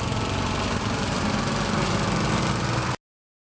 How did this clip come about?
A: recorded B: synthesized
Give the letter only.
A